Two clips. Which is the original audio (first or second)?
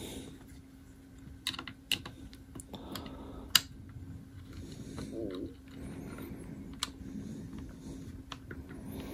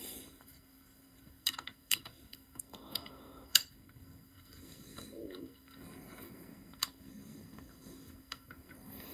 first